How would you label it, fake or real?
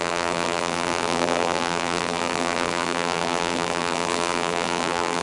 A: fake